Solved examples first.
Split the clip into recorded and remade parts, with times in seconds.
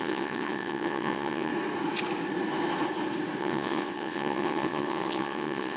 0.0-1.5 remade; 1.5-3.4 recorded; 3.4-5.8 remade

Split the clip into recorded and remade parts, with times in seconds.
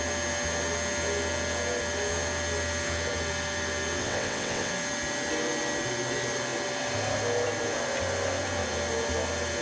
0.0-4.0 recorded; 4.0-4.7 remade; 4.7-9.6 recorded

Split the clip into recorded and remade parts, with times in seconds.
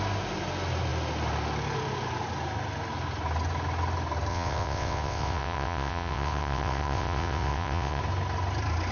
0.0-4.3 recorded; 4.3-8.0 remade; 8.0-8.9 recorded